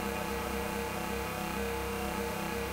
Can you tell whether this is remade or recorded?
remade